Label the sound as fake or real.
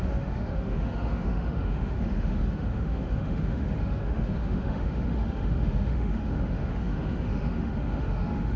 fake